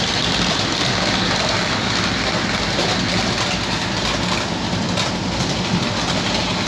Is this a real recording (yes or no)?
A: yes